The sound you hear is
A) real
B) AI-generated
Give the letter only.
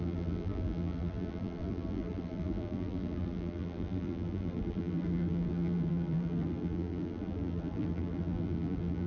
B